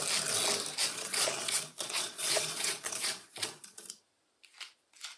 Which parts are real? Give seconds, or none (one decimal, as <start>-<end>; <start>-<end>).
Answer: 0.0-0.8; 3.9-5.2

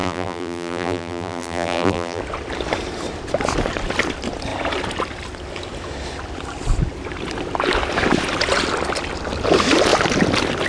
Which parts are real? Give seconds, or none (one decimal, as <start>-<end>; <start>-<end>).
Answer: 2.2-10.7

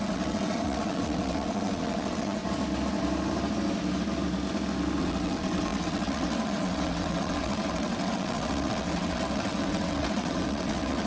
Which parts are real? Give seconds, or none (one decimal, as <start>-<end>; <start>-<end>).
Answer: 2.4-5.0

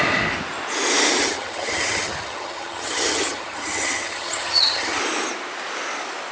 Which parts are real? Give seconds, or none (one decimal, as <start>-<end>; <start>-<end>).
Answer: 0.0-1.2; 5.0-6.3

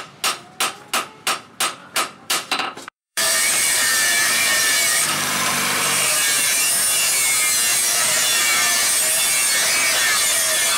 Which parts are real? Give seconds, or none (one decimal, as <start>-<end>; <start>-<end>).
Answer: 0.0-1.8; 6.6-7.7; 9.0-10.8

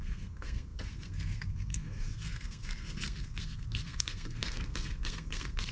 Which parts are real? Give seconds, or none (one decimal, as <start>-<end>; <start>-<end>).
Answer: none